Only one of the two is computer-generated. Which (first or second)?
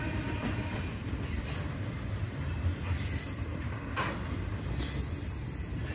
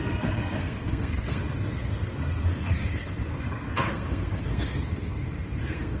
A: second